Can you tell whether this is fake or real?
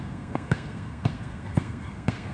fake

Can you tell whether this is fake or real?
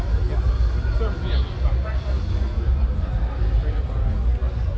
real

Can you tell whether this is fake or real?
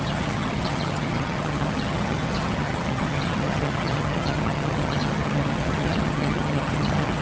fake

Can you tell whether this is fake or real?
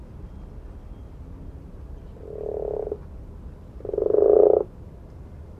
real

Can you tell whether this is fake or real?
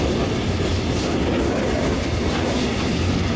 real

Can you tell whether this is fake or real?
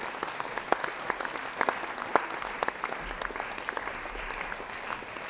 real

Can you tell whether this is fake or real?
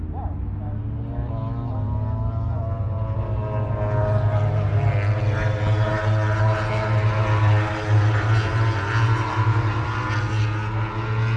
real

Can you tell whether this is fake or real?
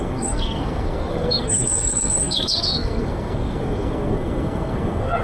fake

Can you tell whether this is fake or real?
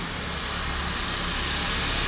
real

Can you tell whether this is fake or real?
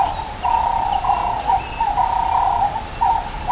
real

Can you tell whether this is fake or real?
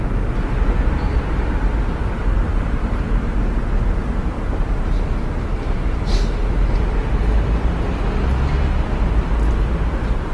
real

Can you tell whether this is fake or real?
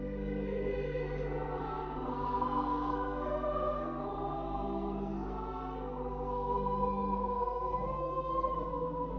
fake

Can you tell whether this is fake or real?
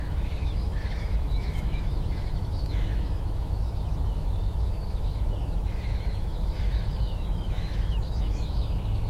fake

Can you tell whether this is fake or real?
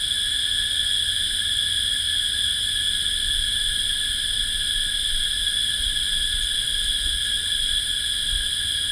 real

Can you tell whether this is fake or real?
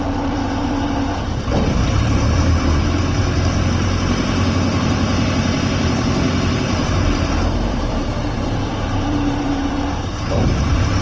fake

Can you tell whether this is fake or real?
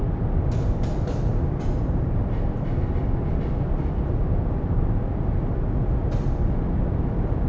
real